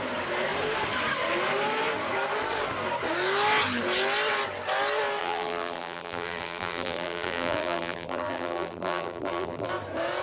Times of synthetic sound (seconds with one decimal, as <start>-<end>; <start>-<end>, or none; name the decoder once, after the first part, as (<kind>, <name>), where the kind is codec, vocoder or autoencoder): 5.2-9.7 (vocoder, BigVGAN v2)